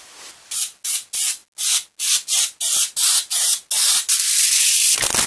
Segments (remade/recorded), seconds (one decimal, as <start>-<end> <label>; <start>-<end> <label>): 0.0-5.3 recorded